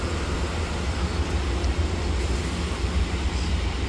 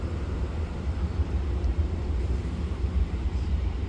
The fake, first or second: second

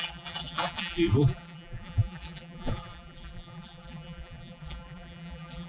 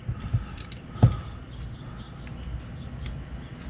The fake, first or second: first